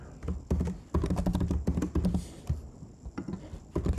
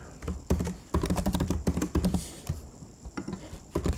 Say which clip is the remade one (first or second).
second